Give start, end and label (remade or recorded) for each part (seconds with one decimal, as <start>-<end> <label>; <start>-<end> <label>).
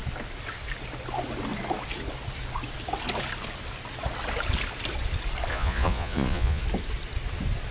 0.0-5.5 recorded; 5.5-6.6 remade; 6.6-7.7 recorded